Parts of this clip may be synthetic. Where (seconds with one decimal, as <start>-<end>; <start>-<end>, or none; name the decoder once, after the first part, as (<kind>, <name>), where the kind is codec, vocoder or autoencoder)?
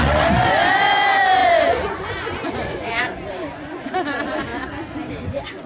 0.0-4.5 (vocoder, Vocos); 5.2-5.7